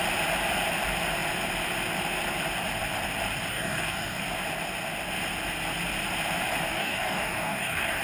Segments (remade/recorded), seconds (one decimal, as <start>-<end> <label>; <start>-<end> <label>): 0.0-3.5 recorded; 3.5-4.2 remade; 4.2-6.7 recorded; 6.7-8.0 remade